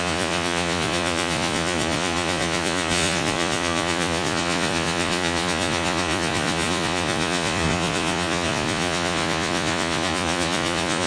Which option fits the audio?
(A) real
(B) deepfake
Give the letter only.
B